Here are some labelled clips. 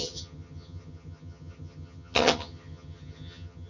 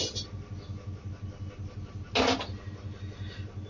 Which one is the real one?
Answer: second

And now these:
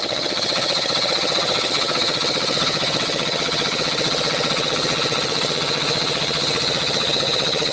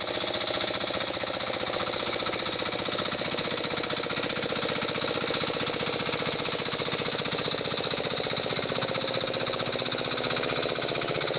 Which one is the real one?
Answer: second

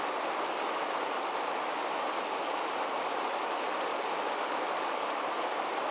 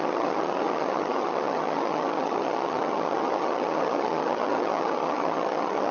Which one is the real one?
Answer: first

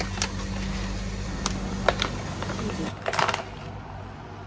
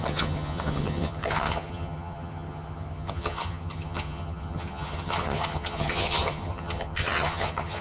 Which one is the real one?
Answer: first